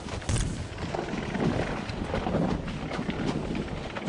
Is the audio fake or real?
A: real